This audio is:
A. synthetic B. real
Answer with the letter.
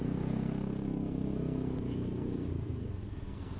A